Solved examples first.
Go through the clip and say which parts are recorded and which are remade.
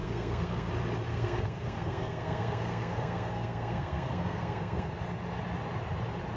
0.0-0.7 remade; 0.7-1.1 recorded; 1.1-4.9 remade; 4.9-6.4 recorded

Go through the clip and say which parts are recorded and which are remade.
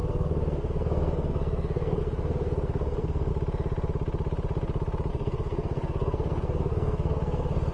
0.0-3.3 remade; 3.3-5.1 recorded; 5.1-7.7 remade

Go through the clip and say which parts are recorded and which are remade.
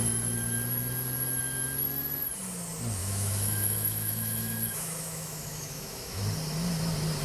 0.0-3.0 recorded; 3.0-6.2 remade; 6.2-7.2 recorded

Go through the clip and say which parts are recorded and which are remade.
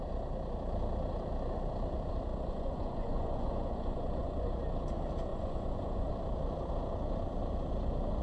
0.0-2.3 recorded; 2.3-4.5 remade; 4.5-5.3 recorded; 5.3-6.1 remade; 6.1-8.2 recorded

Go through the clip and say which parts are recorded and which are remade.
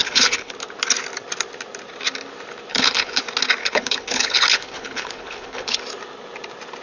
0.0-0.5 remade; 0.5-2.7 recorded; 2.7-3.2 remade; 3.2-3.6 recorded; 3.6-5.8 remade; 5.8-6.8 recorded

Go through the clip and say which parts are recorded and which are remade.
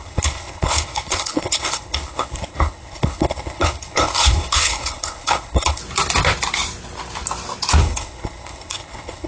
0.0-5.8 remade; 5.8-7.8 recorded; 7.8-9.3 remade